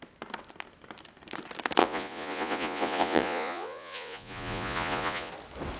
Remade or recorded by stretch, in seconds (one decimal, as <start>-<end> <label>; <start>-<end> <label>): 0.0-1.8 recorded; 1.8-5.3 remade; 5.3-5.8 recorded